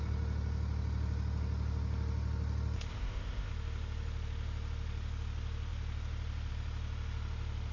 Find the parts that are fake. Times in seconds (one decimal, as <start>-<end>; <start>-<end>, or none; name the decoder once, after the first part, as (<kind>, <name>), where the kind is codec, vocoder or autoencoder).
2.9-3.5 (codec, ZipCodec)